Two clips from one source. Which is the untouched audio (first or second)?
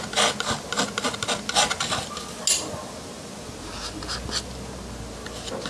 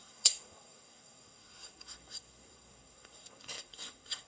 first